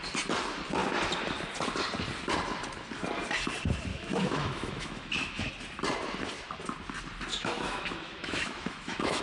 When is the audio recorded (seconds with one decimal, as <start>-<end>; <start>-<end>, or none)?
0.0-3.9; 5.5-7.3